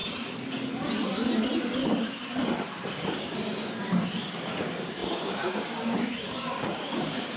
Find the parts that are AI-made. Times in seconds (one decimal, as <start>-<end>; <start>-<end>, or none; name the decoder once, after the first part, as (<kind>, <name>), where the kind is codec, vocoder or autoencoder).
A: 3.1-7.4 (codec, DAC)